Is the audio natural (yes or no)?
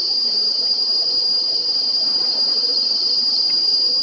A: no